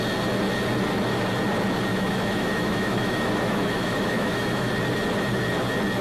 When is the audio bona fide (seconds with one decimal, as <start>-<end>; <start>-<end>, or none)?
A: 0.0-1.9; 4.7-6.0